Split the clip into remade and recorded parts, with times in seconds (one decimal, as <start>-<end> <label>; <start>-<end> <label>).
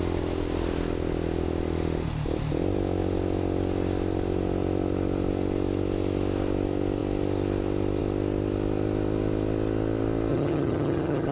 0.0-10.3 recorded; 10.3-11.3 remade